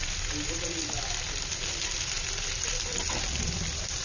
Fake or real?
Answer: real